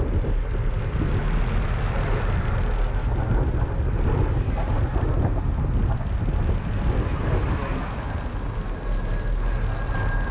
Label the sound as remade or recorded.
recorded